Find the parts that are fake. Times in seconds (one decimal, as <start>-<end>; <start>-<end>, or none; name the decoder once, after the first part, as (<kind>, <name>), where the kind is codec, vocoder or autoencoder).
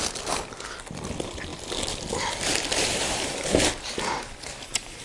none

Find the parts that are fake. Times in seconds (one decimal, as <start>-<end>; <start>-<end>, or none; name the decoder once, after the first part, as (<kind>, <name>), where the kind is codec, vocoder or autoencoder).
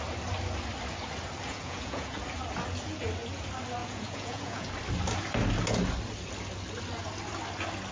1.5-2.2 (vocoder, Vocos); 3.8-4.7